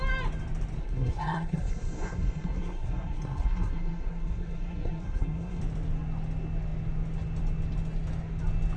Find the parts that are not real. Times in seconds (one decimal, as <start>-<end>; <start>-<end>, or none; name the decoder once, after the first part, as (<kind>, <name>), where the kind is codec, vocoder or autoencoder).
0.8-5.6 (codec, SNAC)